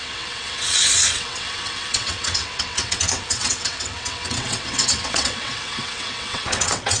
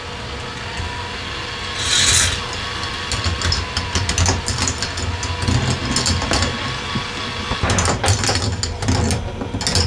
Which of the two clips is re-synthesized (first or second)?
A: first